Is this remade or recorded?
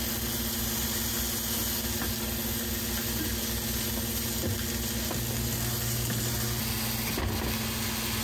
recorded